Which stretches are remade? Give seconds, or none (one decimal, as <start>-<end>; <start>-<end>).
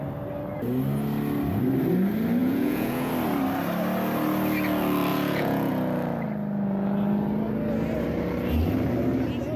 2.4-3.1; 5.1-5.7